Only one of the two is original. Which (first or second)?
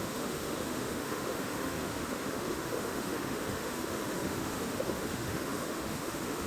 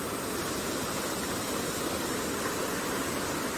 second